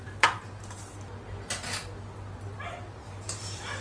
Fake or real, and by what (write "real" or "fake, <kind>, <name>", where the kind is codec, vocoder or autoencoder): real